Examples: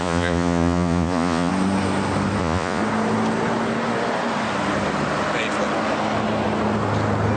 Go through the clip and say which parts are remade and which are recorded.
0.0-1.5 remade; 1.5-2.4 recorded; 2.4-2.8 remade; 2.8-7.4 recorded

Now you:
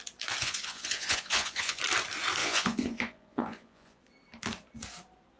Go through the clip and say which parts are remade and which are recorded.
0.0-0.4 recorded; 0.4-1.8 remade; 1.8-2.4 recorded; 2.4-4.0 remade; 4.0-5.4 recorded

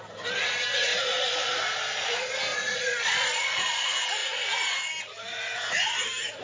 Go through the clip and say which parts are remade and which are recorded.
0.0-0.9 recorded; 0.9-1.6 remade; 1.6-2.5 recorded; 2.5-3.8 remade; 3.8-6.4 recorded